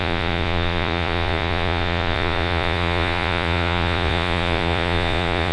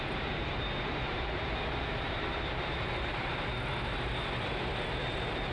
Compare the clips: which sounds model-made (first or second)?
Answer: first